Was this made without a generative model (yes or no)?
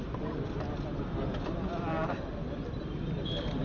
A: yes